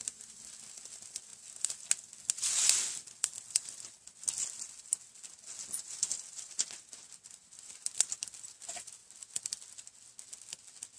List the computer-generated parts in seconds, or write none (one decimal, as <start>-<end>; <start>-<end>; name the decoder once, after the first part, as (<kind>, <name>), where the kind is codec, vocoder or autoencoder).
none